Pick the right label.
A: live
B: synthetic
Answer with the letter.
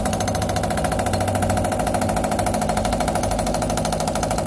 A